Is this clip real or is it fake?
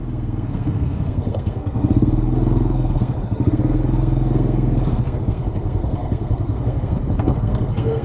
fake